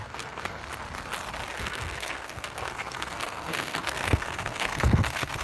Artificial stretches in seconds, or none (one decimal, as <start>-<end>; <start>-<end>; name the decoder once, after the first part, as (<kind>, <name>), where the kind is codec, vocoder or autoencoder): 0.0-0.6 (codec, SNAC); 1.6-5.4